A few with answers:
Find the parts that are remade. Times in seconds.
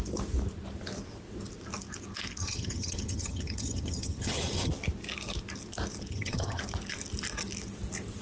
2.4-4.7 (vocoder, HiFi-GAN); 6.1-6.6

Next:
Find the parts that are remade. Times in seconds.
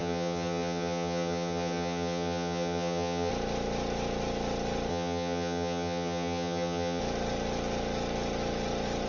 0.0-3.3 (vocoder, HiFi-GAN); 4.9-7.0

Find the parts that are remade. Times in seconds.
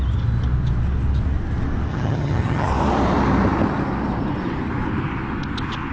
1.9-2.7 (vocoder, HiFi-GAN)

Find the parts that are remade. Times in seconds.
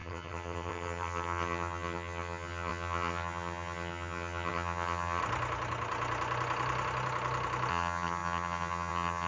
0.0-5.2 (vocoder, HiFi-GAN); 7.7-9.3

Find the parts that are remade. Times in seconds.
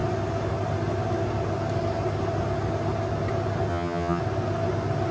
3.7-4.2 (vocoder, HiFi-GAN)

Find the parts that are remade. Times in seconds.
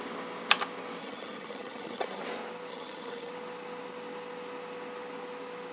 1.0-2.2 (vocoder, HiFi-GAN); 2.7-3.3